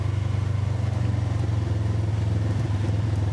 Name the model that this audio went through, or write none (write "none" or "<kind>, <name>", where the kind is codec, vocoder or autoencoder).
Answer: none